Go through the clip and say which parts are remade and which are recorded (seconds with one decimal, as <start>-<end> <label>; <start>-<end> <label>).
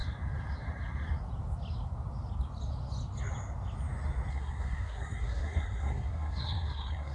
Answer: 0.0-4.3 recorded; 4.3-7.1 remade